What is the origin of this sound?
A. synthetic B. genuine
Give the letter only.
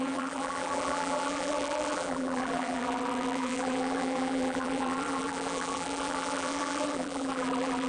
A